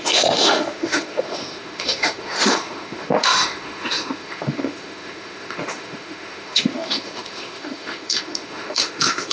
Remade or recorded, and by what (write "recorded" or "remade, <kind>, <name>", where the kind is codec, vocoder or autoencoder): remade, autoencoder, DAC-VAE